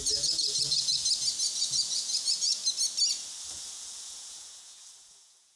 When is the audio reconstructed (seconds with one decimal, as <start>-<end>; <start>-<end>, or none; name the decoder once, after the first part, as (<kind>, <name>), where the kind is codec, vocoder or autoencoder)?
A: 0.0-1.0 (vocoder, Vocos); 1.5-2.6; 3.4-5.6